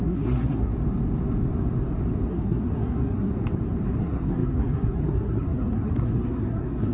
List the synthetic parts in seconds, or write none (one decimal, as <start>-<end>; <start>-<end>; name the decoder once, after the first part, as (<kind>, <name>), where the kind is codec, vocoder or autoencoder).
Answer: 0.0-0.7 (codec, SNAC); 2.3-3.3; 4.0-6.9